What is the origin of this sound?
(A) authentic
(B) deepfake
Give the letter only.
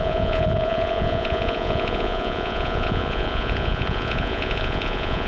B